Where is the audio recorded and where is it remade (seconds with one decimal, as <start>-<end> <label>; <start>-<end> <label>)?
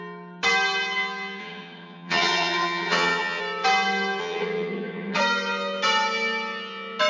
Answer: 0.0-1.4 recorded; 1.4-3.4 remade; 3.4-4.2 recorded; 4.2-5.2 remade; 5.2-7.1 recorded